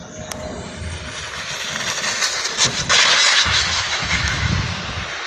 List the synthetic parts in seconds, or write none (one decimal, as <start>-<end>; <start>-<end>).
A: 3.3-4.5